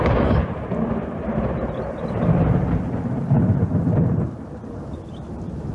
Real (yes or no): no